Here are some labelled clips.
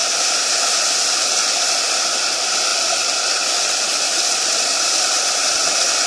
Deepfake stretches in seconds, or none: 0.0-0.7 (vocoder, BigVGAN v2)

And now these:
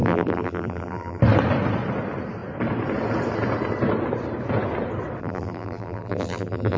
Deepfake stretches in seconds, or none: 0.0-1.2 (vocoder, BigVGAN v2); 5.2-6.8

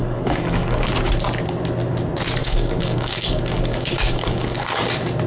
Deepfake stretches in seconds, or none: 0.0-0.9 (codec, DAC); 2.4-4.8

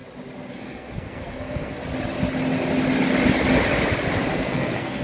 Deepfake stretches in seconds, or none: 0.5-1.8 (codec, SNAC); 4.3-5.0

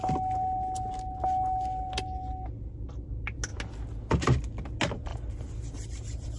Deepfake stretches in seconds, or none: 5.1-6.4 (vocoder, BigVGAN v2)

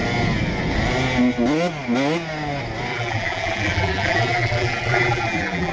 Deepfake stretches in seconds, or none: 2.9-5.7 (vocoder, BigVGAN v2)